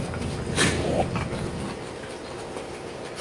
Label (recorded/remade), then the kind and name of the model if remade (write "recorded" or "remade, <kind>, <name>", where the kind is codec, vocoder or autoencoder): recorded